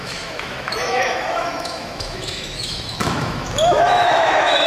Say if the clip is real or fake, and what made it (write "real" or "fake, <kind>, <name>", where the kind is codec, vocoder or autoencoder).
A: fake, autoencoder, DAC-VAE